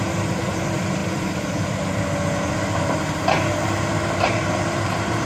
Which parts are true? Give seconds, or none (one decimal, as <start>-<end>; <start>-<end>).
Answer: 1.0-4.2

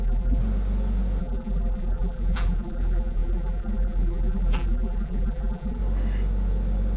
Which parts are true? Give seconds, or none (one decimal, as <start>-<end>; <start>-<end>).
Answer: 0.4-1.2; 5.8-7.0

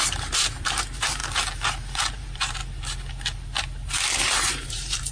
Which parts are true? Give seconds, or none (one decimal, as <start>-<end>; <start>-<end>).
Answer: 1.2-2.1; 2.6-4.3

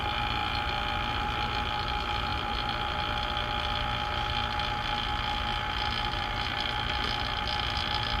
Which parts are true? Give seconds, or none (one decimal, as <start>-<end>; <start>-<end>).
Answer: 0.0-0.4; 1.1-2.3; 3.0-5.5; 6.6-8.2

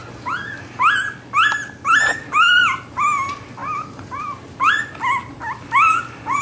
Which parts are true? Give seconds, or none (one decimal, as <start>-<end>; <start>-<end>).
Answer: 0.0-3.6; 4.7-6.4